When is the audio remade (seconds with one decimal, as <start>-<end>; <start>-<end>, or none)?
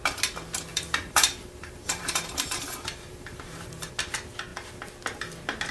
0.7-3.9